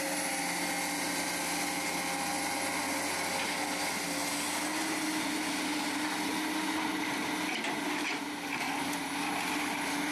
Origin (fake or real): real